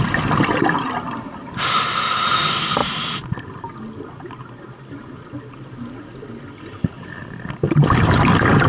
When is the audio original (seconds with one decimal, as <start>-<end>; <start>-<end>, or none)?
0.0-8.7